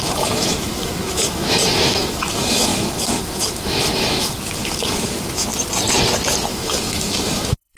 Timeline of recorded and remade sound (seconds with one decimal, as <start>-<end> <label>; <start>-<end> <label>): 0.0-5.5 remade; 5.5-6.5 recorded; 6.5-7.8 remade